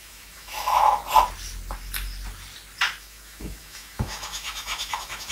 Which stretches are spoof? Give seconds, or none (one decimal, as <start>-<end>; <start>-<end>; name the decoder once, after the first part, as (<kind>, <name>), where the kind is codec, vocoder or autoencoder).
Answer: 0.0-1.0 (autoencoder, DAC-VAE); 3.0-5.3